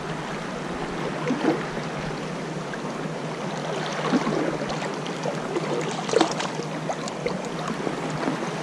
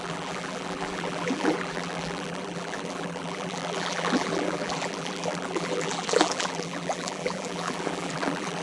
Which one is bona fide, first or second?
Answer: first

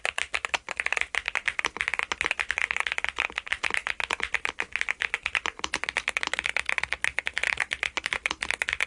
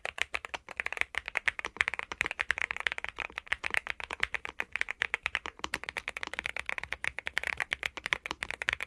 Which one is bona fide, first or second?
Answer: first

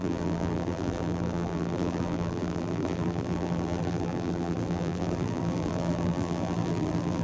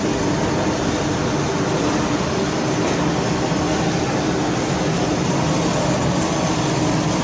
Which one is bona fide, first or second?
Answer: second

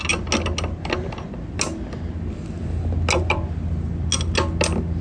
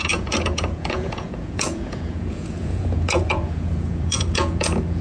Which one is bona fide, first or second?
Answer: first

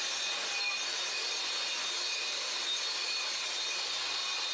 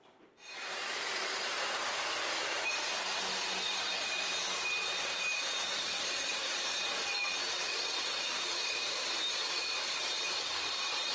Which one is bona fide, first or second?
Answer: first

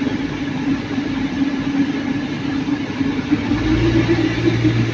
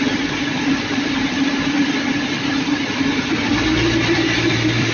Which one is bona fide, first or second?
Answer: first